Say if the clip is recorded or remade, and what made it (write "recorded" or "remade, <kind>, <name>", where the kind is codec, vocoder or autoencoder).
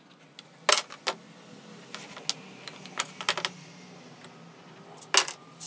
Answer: recorded